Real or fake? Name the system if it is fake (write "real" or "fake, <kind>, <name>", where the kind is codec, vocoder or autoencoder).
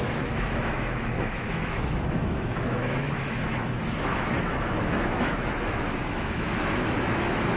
fake, autoencoder, DAC-VAE